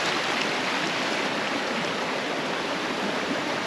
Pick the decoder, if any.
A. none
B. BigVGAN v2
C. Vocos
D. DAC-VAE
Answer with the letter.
B